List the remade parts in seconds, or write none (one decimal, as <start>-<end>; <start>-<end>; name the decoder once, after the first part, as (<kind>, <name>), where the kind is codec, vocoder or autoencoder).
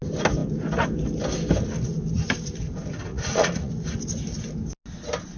3.1-3.7 (vocoder, Vocos)